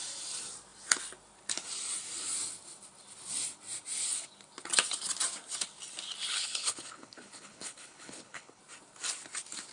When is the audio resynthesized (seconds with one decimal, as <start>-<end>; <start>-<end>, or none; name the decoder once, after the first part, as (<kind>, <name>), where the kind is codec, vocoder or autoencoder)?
6.3-8.6 (codec, HILCodec)